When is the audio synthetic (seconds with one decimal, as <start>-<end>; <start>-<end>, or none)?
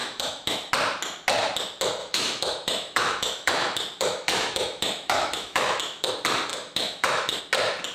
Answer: 0.0-0.7; 2.0-6.1; 6.5-7.4